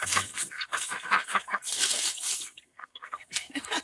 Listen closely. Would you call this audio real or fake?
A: fake